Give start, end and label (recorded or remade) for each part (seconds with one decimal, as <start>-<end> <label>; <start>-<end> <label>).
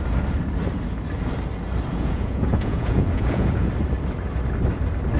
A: 0.0-1.9 recorded; 1.9-3.7 remade; 3.7-5.2 recorded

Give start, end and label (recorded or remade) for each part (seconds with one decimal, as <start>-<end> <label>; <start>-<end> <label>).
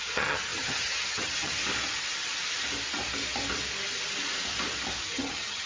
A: 0.0-1.6 remade; 1.6-5.0 recorded; 5.0-5.7 remade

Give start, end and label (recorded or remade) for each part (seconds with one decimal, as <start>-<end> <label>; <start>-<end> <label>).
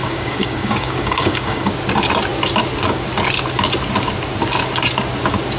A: 0.0-1.7 remade; 1.7-5.6 recorded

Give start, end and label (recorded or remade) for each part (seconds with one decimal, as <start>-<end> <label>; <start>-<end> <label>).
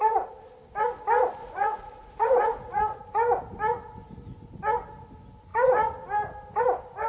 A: 0.0-1.4 recorded; 1.4-3.0 remade; 3.0-7.1 recorded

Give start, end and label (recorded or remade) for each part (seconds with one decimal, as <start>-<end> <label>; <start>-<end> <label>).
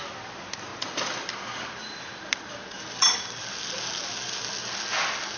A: 0.0-5.4 recorded